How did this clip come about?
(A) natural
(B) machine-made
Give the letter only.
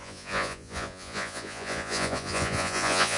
B